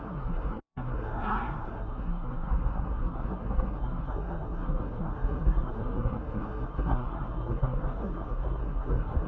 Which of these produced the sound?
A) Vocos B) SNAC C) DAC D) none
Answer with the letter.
B